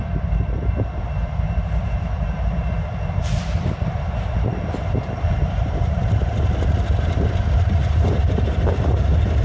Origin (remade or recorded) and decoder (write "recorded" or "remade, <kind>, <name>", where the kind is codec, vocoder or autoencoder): remade, vocoder, BigVGAN v2